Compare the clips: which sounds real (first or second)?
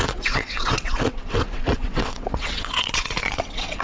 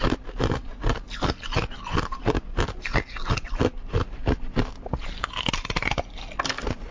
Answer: second